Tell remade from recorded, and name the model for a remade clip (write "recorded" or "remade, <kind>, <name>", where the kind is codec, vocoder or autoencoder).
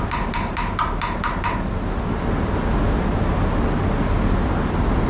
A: recorded